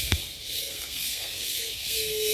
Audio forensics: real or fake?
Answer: fake